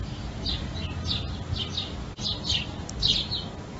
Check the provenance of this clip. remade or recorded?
recorded